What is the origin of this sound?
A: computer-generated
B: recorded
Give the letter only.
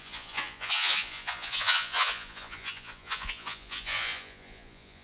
A